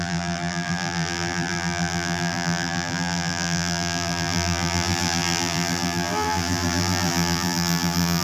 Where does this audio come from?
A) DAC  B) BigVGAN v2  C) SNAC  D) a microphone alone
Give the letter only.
B